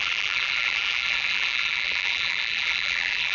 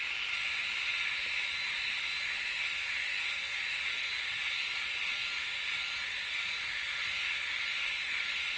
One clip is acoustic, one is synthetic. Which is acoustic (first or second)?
second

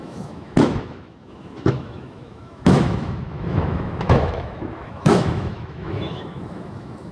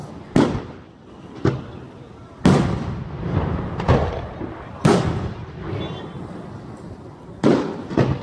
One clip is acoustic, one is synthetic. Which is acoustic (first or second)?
second